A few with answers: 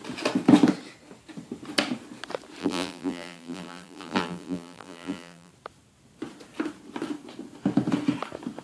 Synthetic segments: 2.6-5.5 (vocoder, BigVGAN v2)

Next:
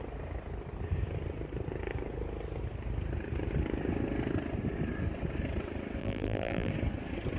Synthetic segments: 6.0-6.7 (vocoder, BigVGAN v2)

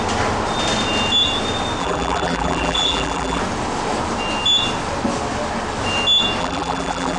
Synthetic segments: 1.8-3.4 (vocoder, BigVGAN v2); 6.4-7.2

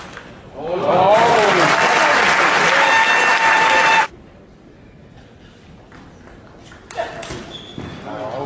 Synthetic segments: 0.7-1.5 (vocoder, BigVGAN v2); 3.3-4.5

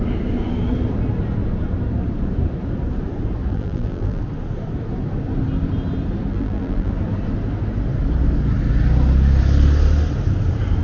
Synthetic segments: 3.5-4.2 (vocoder, BigVGAN v2); 6.3-6.9

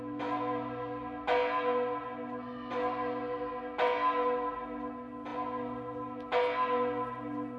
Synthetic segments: none